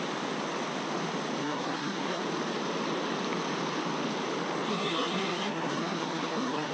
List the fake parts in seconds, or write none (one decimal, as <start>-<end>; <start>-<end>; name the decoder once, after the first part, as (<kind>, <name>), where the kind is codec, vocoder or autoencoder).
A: 1.4-2.2 (codec, SNAC); 4.7-6.7